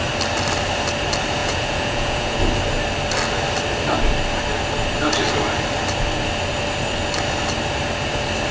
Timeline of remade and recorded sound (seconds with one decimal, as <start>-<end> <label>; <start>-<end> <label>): 0.0-1.4 recorded; 1.4-2.4 remade; 2.4-8.5 recorded